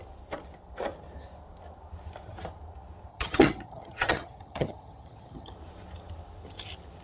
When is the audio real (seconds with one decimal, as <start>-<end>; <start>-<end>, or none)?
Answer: 0.0-3.1; 5.5-7.0